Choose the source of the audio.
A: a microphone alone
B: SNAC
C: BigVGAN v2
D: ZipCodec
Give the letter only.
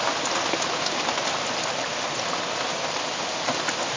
C